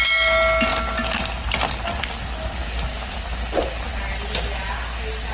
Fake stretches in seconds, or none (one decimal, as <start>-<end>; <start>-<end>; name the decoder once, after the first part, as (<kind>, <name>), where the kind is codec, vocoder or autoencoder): none